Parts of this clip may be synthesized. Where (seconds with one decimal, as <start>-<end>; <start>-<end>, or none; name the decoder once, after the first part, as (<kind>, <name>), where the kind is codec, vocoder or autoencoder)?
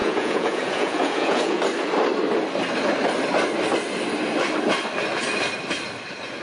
0.0-1.6 (vocoder, Vocos)